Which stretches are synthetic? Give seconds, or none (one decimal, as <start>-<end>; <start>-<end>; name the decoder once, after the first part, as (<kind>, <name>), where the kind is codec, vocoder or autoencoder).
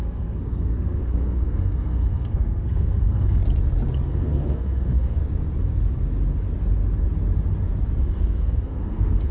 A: 0.0-3.4 (codec, SNAC); 4.1-5.2; 8.0-9.3